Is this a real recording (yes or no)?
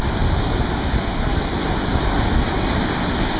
yes